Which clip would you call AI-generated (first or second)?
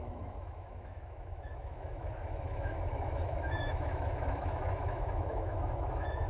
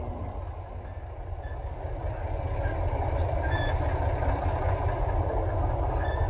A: first